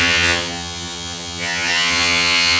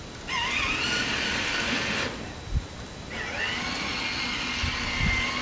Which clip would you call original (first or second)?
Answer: second